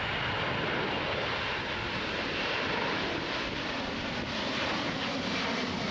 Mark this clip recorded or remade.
recorded